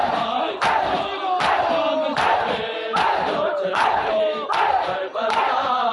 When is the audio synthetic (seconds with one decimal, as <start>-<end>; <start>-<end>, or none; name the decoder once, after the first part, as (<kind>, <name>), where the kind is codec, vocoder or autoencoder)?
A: 3.6-4.2 (codec, HILCodec)